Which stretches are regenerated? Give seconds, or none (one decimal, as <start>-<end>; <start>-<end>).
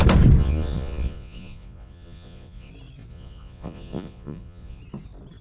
0.4-2.7; 3.1-4.8